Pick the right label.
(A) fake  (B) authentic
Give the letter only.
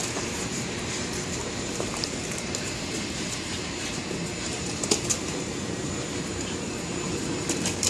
A